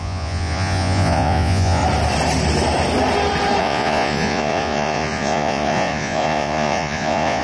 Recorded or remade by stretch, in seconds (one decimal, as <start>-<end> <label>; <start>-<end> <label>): 0.0-1.8 remade; 1.8-3.6 recorded; 3.6-7.4 remade

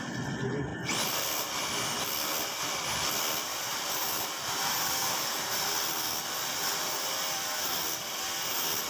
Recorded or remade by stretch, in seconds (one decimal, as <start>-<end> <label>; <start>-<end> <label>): 0.0-3.5 recorded; 3.5-5.6 remade; 5.6-8.9 recorded

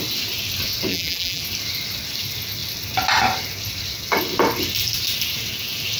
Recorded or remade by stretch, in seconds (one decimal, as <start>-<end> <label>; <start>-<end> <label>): 0.0-0.9 recorded; 0.9-1.4 remade; 1.4-6.0 recorded